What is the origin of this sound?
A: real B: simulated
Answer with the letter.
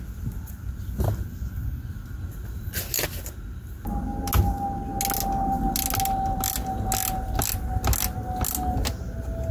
A